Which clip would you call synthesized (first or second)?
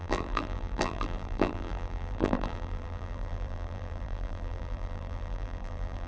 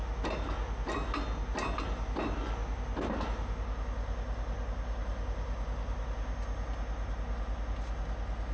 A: first